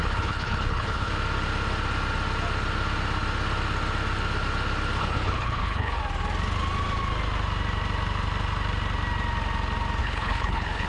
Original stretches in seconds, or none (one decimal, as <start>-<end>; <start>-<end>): 1.1-5.0; 6.0-10.0